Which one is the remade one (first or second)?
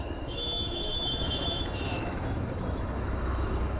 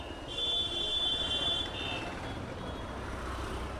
first